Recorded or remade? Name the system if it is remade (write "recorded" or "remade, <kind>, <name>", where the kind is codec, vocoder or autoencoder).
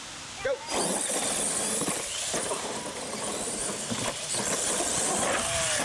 recorded